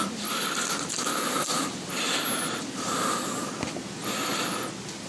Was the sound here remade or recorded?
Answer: recorded